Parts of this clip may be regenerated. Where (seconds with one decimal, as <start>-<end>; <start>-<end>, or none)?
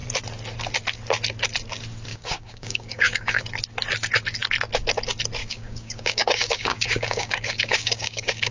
2.1-3.4; 5.4-8.5